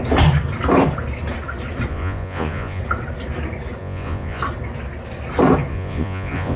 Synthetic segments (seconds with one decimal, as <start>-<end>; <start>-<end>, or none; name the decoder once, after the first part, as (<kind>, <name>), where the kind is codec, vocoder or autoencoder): 1.9-2.8 (vocoder, Vocos); 3.8-4.4; 5.7-6.6